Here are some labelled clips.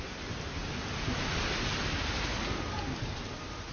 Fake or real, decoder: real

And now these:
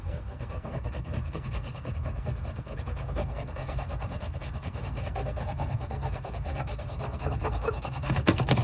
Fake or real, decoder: fake, codec, SNAC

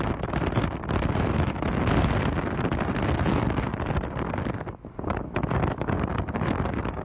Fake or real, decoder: real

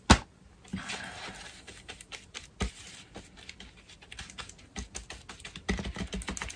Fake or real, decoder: real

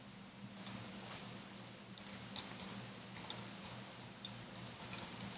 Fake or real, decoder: real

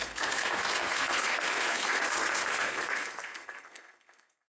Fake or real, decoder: fake, codec, SNAC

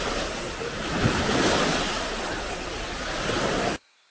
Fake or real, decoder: real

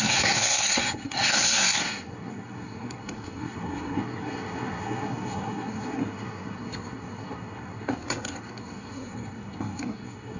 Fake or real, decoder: fake, codec, SNAC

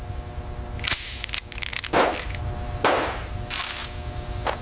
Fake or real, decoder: real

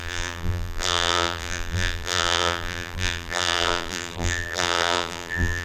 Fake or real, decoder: fake, vocoder, BigVGAN v2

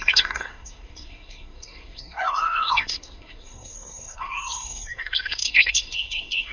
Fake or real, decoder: fake, codec, SNAC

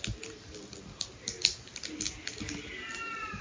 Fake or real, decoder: real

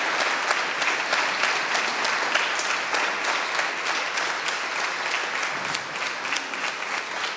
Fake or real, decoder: real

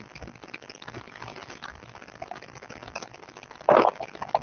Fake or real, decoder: real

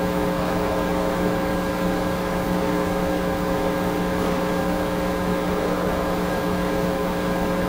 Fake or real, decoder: fake, codec, DAC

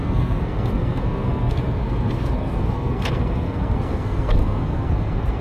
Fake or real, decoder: fake, codec, SNAC